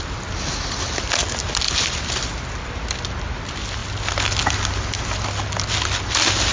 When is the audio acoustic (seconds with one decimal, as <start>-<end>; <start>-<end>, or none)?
0.0-6.5